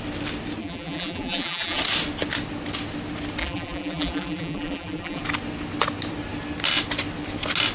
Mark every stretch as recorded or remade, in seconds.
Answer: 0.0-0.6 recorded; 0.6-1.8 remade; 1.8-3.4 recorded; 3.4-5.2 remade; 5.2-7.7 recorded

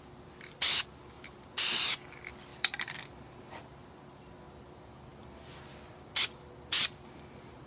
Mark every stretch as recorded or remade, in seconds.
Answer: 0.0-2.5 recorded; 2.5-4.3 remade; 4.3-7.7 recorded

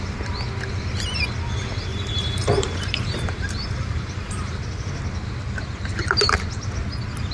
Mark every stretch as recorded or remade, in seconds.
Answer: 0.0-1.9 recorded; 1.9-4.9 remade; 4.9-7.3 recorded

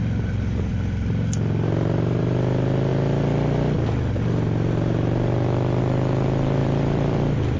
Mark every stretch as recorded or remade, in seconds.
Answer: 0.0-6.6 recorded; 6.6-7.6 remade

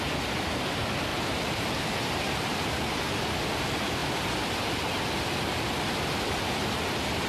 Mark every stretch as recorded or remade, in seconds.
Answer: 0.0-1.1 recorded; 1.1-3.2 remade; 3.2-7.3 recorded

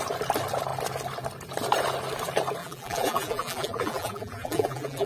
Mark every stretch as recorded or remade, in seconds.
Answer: 0.0-2.6 recorded; 2.6-5.1 remade